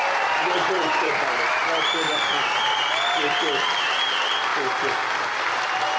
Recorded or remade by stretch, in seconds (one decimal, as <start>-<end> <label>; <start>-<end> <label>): 0.0-0.4 recorded; 0.4-1.1 remade; 1.1-6.0 recorded

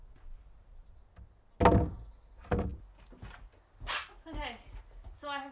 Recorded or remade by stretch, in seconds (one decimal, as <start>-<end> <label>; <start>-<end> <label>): 0.0-5.5 recorded

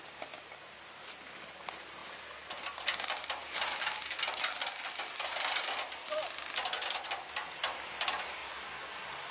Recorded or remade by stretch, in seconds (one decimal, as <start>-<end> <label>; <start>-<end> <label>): 0.0-9.3 recorded

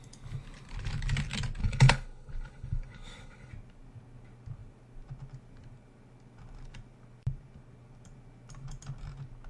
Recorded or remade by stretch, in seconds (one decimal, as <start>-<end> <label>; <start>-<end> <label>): 0.0-1.6 recorded; 1.6-3.5 remade; 3.5-9.5 recorded

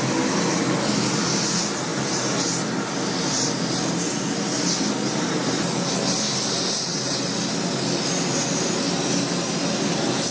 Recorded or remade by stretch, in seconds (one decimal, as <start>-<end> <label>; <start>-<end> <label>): 0.0-10.3 recorded